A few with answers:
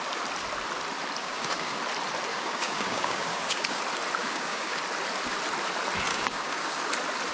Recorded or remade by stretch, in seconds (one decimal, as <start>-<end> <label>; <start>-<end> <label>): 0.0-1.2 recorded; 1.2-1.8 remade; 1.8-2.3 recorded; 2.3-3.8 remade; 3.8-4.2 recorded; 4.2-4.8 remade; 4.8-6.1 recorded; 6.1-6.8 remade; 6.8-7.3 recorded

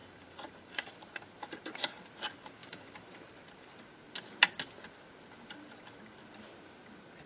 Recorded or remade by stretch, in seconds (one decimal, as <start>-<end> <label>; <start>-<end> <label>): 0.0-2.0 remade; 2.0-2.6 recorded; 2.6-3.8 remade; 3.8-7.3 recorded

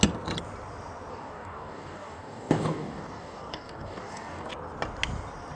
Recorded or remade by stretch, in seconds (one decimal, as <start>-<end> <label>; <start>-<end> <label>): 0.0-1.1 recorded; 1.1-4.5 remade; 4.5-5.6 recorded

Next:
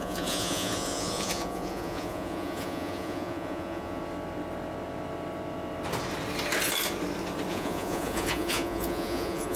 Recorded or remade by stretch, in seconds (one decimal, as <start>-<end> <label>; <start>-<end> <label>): 0.0-4.0 remade; 4.0-7.5 recorded; 7.5-9.6 remade